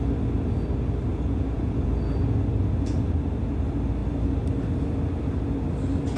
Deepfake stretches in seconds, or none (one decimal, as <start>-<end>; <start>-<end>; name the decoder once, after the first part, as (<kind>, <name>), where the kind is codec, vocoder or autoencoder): 1.1-1.9 (vocoder, Vocos)